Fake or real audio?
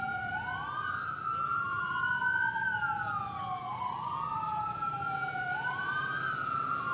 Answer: real